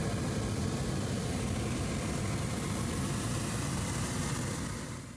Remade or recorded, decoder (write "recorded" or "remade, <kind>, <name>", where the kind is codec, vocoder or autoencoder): recorded